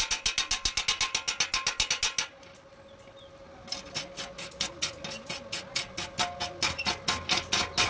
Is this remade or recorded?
recorded